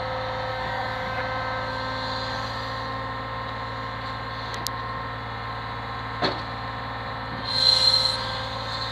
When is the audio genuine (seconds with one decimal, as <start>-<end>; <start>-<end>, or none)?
0.0-0.5; 1.2-8.9